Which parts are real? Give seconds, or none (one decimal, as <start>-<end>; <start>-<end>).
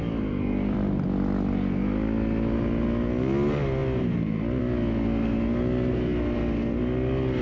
0.0-7.4